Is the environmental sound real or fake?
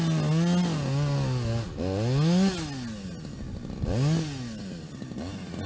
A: real